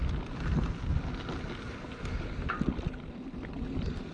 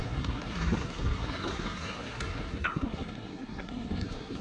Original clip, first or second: first